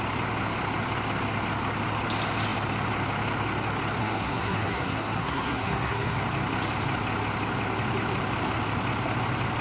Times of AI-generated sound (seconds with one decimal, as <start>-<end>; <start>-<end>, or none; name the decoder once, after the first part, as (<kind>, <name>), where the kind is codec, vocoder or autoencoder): 4.0-6.2 (codec, SNAC)